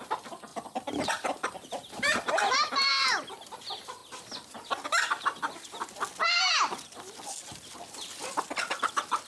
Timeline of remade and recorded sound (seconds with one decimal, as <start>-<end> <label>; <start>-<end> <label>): 0.0-2.9 remade; 2.9-3.5 recorded; 3.5-4.0 remade; 4.0-9.3 recorded